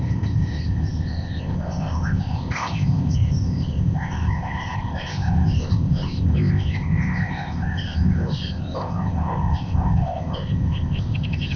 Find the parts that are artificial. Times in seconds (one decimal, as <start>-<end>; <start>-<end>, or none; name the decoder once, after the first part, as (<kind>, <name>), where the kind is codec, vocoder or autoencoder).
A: 0.0-11.6 (codec, ZipCodec)